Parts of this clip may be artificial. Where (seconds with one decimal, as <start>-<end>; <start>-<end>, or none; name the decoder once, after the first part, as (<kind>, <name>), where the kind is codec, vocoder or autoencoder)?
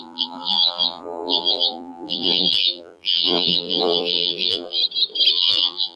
0.0-4.8 (vocoder, BigVGAN v2); 5.3-6.0